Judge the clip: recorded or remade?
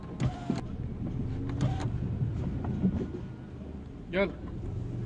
recorded